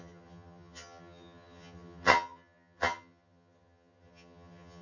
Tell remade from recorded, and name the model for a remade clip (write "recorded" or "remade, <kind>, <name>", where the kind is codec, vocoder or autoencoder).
remade, vocoder, HiFi-GAN